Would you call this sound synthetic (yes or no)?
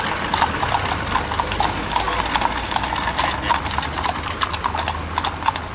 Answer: no